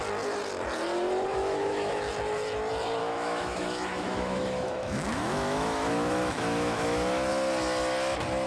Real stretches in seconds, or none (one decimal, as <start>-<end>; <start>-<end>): 0.0-1.3; 2.1-3.0; 7.3-8.5